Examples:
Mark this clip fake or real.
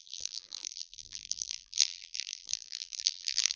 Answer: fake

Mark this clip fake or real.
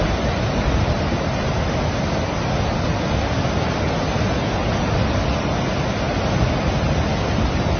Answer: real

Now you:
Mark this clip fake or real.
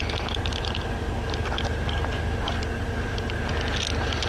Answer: real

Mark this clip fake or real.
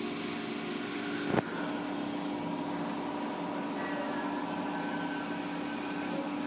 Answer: real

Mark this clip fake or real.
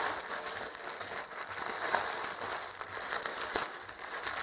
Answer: real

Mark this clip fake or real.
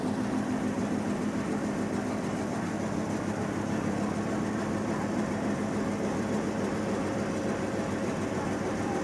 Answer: fake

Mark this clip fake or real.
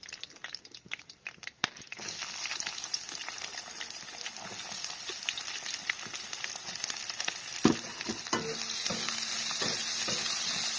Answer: real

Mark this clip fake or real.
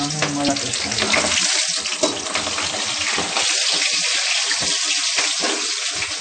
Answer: real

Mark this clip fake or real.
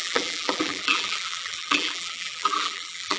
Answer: fake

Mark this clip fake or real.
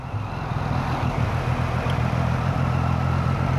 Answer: real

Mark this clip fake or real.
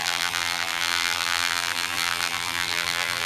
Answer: fake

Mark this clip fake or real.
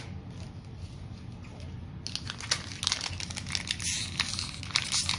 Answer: real